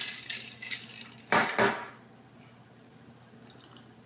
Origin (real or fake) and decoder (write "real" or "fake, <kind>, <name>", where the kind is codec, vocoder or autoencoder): real